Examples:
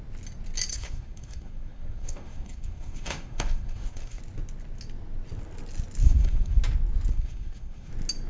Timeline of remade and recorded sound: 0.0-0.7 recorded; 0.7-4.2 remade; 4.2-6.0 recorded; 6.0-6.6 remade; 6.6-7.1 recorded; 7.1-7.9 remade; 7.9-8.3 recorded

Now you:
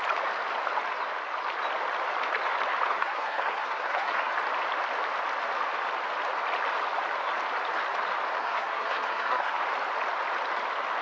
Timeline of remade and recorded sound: 0.0-2.9 recorded; 2.9-4.3 remade; 4.3-8.4 recorded; 8.4-9.6 remade; 9.6-11.0 recorded

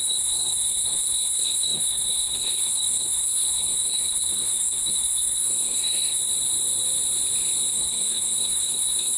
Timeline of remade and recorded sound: 0.0-6.2 remade; 6.2-7.7 recorded; 7.7-9.2 remade

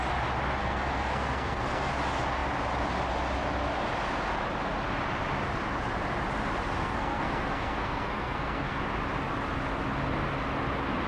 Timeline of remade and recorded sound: 0.0-0.6 recorded; 0.6-1.9 remade; 1.9-6.8 recorded; 6.8-8.8 remade; 8.8-11.1 recorded

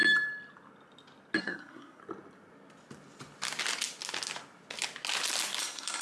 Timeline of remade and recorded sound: 0.0-1.4 recorded; 1.4-2.0 remade; 2.0-5.6 recorded; 5.6-6.0 remade

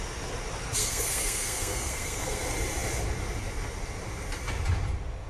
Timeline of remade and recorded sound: 0.0-0.8 recorded; 0.8-2.4 remade; 2.4-5.3 recorded

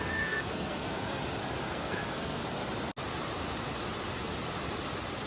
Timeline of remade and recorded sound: 0.0-1.2 remade; 1.2-1.7 recorded; 1.7-2.4 remade; 2.4-5.3 recorded